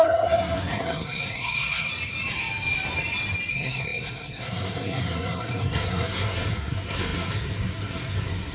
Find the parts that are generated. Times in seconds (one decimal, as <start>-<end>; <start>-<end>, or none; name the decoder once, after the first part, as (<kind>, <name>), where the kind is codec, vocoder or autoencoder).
0.0-1.9 (codec, SNAC); 3.5-8.5